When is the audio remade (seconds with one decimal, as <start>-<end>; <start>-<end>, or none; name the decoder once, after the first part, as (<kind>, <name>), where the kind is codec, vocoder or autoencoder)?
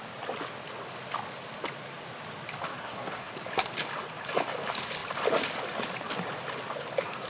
2.7-3.3 (codec, SNAC)